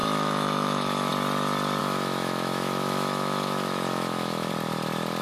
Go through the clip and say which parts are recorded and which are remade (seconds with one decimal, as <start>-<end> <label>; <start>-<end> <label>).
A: 0.0-1.1 remade; 1.1-1.8 recorded; 1.8-4.5 remade; 4.5-5.2 recorded